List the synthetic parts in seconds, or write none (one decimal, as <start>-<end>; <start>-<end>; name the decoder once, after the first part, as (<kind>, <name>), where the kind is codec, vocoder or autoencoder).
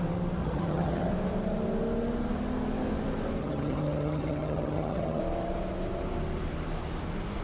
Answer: 0.4-1.1 (vocoder, HiFi-GAN); 3.4-5.2